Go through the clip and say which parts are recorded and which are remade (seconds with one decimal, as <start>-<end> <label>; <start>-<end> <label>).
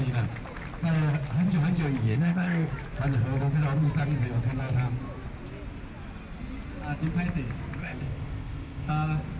0.0-2.0 recorded; 2.0-2.7 remade; 2.7-7.8 recorded; 7.8-8.9 remade; 8.9-9.4 recorded